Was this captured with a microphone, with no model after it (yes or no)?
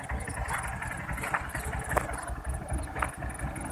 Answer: yes